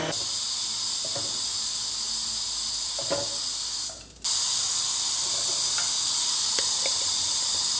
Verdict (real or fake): real